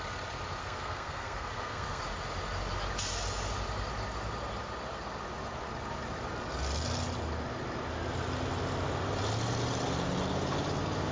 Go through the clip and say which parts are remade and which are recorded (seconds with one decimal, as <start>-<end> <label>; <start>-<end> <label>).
0.0-0.6 recorded; 0.6-2.0 remade; 2.0-11.1 recorded

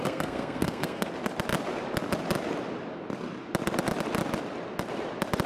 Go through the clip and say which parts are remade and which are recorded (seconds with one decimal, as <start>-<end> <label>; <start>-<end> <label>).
0.0-1.1 remade; 1.1-5.5 recorded

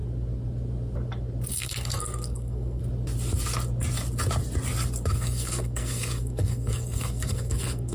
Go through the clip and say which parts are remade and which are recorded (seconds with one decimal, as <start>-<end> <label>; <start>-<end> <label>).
0.0-1.5 recorded; 1.5-2.8 remade; 2.8-5.1 recorded; 5.1-7.9 remade

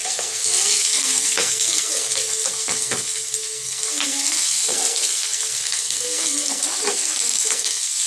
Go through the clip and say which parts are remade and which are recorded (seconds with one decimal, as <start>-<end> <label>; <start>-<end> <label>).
0.0-8.1 remade